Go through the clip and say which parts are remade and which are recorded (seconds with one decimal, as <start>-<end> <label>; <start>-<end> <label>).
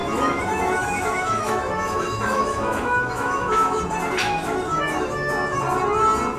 0.0-3.8 remade; 3.8-4.2 recorded; 4.2-5.3 remade; 5.3-6.4 recorded